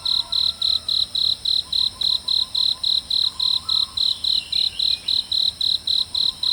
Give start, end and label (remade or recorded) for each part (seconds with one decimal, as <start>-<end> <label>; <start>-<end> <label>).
0.0-1.2 remade; 1.2-5.1 recorded; 5.1-6.5 remade